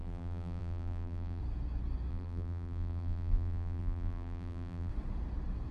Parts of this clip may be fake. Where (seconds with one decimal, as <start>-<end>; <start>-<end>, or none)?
0.0-1.4; 2.1-4.9